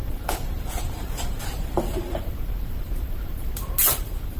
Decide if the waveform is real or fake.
fake